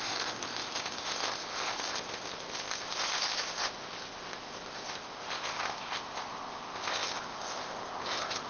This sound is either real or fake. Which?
fake